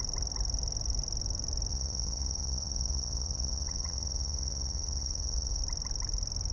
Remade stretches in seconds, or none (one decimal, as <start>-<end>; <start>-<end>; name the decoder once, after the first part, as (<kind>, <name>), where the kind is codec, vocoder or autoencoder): 1.7-5.6 (vocoder, Vocos)